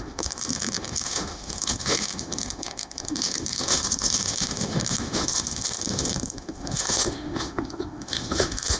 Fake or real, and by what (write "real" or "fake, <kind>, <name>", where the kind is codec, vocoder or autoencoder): fake, autoencoder, DAC-VAE